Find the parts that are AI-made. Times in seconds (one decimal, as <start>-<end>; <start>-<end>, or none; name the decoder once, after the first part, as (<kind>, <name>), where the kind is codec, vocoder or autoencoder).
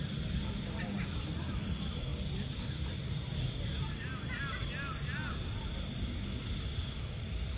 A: none